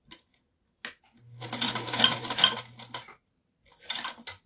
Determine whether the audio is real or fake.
real